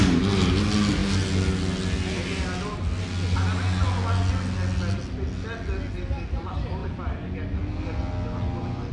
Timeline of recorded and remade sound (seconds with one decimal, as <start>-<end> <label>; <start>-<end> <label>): 0.0-8.9 recorded